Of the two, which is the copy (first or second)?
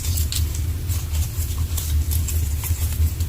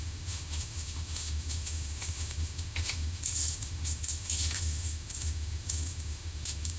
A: second